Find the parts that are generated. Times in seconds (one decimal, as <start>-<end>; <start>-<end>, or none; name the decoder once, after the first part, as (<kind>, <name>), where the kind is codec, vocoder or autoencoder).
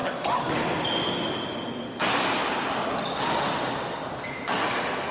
none